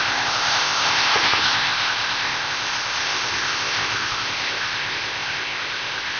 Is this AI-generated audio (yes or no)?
yes